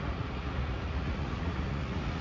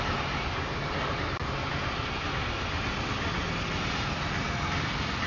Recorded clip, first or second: second